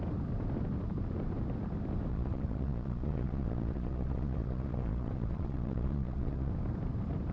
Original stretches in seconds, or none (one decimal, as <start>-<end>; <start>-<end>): 0.0-2.1; 6.5-7.3